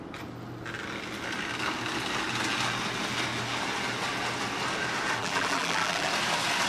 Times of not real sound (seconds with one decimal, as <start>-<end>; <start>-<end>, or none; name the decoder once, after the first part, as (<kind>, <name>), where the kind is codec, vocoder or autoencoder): 5.2-6.1 (vocoder, BigVGAN v2)